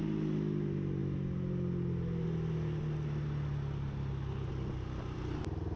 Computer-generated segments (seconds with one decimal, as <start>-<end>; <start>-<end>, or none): none